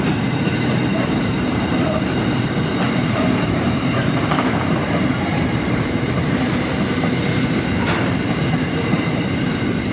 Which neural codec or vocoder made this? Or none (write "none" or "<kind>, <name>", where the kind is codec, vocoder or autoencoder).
vocoder, BigVGAN v2